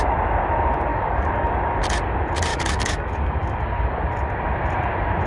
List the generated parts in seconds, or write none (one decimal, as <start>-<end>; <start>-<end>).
0.9-1.5; 2.5-4.0